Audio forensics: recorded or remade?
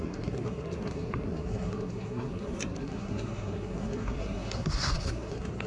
remade